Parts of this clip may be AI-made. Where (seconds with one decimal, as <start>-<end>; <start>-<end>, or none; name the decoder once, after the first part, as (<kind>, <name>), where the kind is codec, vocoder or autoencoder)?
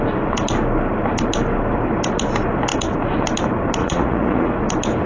3.8-4.5 (vocoder, Vocos)